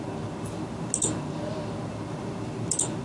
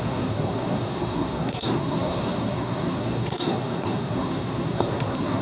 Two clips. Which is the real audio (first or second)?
first